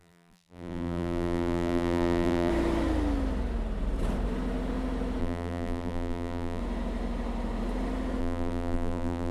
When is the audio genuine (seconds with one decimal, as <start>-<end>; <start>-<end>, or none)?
2.5-5.2; 6.6-8.2